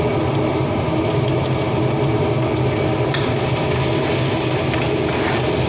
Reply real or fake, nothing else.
real